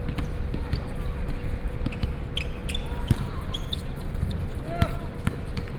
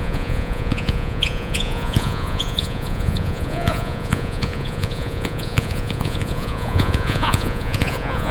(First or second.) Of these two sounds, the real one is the first